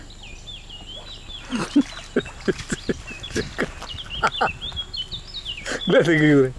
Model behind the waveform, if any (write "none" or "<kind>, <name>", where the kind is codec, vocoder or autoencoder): none